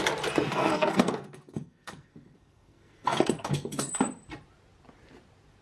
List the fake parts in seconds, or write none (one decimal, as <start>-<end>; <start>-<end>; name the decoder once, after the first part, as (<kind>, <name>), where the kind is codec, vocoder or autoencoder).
0.5-3.9 (codec, SNAC)